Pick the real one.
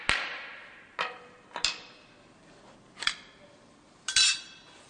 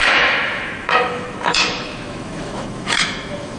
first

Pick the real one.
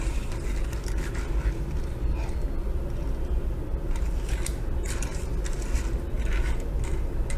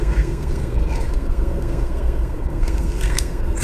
first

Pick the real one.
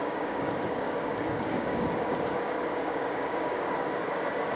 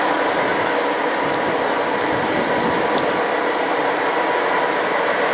second